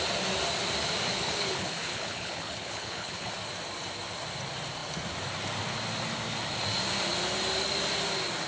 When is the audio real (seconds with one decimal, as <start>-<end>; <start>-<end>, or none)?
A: 0.0-1.1; 3.3-8.5